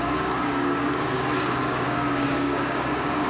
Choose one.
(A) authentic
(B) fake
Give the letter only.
B